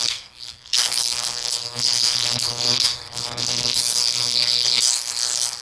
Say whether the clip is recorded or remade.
remade